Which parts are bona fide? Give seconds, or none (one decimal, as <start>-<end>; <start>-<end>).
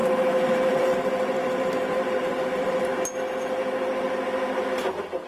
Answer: 3.2-5.3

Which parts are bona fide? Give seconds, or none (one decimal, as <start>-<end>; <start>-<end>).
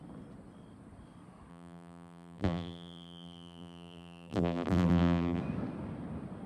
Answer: 0.0-1.5; 5.4-6.5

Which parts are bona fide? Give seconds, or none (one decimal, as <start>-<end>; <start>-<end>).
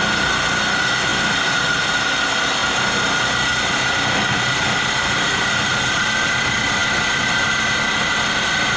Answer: 0.0-8.8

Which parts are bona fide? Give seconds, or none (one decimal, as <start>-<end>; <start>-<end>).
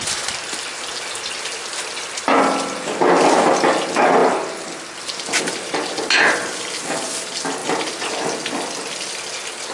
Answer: 0.0-9.7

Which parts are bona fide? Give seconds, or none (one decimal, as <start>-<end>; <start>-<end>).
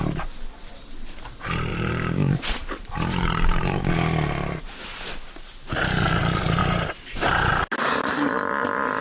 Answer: 0.0-1.7; 3.9-6.6; 7.5-9.0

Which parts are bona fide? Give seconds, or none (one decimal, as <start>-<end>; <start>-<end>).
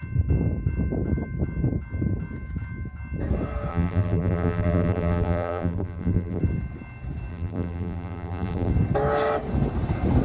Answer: 0.0-3.7; 6.4-7.3; 8.7-10.2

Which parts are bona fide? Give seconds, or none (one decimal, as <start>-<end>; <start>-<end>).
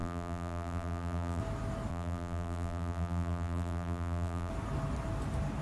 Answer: 1.4-1.9; 4.5-5.6